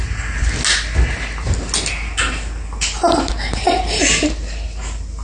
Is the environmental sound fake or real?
real